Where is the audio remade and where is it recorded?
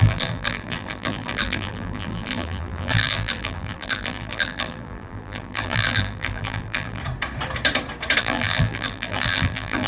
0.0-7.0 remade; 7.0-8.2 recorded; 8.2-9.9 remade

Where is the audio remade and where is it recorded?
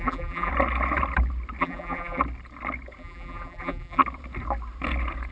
0.0-0.5 remade; 0.5-1.6 recorded; 1.6-2.2 remade; 2.2-3.0 recorded; 3.0-4.0 remade; 4.0-5.3 recorded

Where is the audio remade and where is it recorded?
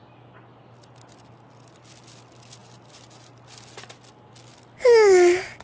0.0-5.6 recorded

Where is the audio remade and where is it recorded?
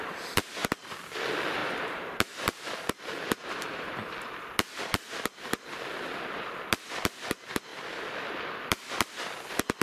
0.0-1.6 recorded; 1.6-3.9 remade; 3.9-9.8 recorded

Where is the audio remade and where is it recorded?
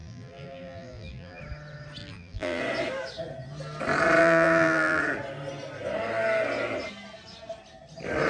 0.0-1.4 remade; 1.4-2.0 recorded; 2.0-2.6 remade; 2.6-4.2 recorded; 4.2-5.0 remade; 5.0-8.3 recorded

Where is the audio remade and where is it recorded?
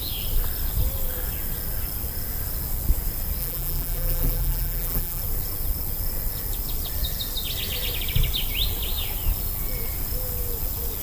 0.0-3.4 recorded; 3.4-5.2 remade; 5.2-11.0 recorded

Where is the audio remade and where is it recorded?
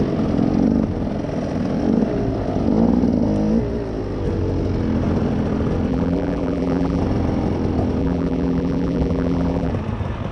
0.0-5.9 recorded; 5.9-7.0 remade; 7.0-8.0 recorded; 8.0-9.7 remade; 9.7-10.3 recorded